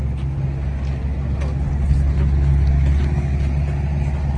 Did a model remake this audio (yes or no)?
no